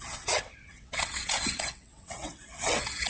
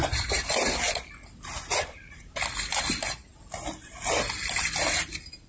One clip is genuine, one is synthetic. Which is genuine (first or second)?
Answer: second